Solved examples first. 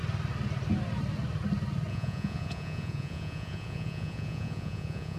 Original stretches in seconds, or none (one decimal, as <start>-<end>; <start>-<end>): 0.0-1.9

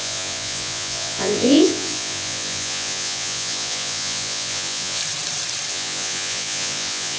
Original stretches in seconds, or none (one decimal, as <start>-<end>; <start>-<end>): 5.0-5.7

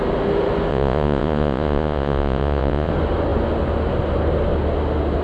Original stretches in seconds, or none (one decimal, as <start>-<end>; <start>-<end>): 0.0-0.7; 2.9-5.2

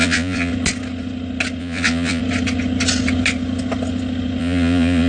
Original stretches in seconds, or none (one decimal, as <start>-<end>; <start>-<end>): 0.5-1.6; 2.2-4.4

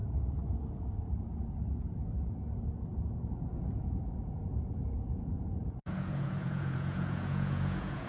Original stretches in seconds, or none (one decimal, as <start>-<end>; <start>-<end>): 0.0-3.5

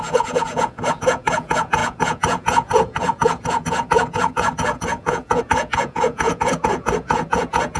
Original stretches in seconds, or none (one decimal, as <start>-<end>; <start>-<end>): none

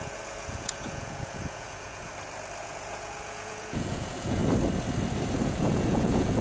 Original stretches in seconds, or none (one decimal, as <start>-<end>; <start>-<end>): 2.1-2.6; 4.4-5.4

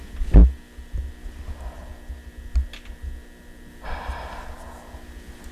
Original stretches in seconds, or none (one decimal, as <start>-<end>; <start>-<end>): 0.0-5.5